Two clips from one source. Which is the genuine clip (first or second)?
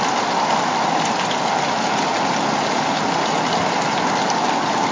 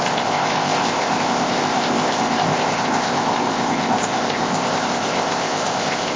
first